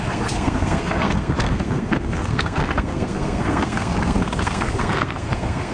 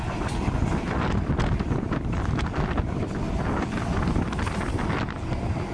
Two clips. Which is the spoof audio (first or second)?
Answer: first